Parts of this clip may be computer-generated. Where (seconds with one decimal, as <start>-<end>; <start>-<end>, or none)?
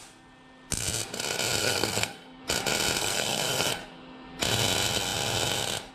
1.6-2.4; 3.0-3.8